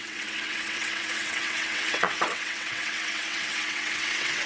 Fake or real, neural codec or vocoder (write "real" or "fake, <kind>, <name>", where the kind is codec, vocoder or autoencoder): fake, vocoder, WaveNeXt